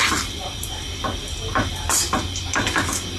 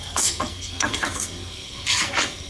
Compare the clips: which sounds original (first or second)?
first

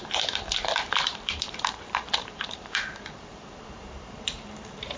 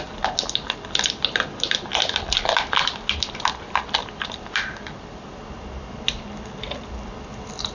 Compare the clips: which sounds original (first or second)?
second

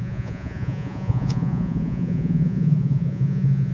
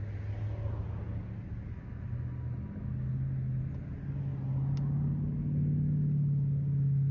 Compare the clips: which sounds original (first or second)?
second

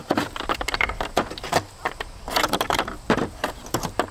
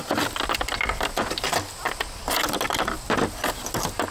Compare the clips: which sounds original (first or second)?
second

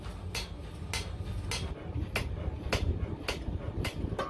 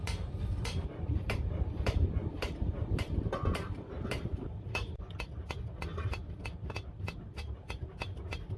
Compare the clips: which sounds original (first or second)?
first